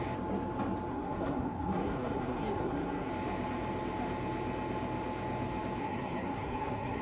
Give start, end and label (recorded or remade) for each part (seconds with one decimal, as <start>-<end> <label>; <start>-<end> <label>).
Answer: 0.0-0.9 recorded; 0.9-3.1 remade; 3.1-5.8 recorded; 5.8-7.0 remade